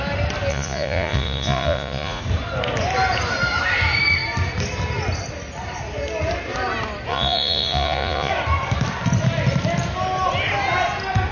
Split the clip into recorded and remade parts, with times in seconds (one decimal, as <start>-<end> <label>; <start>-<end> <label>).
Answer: 0.0-0.5 recorded; 0.5-2.2 remade; 2.2-7.1 recorded; 7.1-8.3 remade; 8.3-11.3 recorded